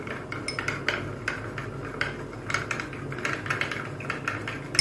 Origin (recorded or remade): recorded